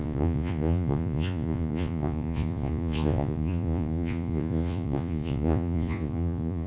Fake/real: fake